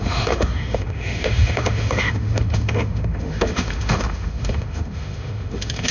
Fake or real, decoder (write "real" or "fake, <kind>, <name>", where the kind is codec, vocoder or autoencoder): fake, autoencoder, DAC-VAE